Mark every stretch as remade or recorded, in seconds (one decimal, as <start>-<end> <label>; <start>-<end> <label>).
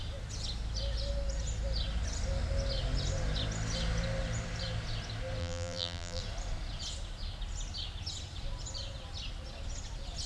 0.0-5.4 recorded; 5.4-6.2 remade; 6.2-10.3 recorded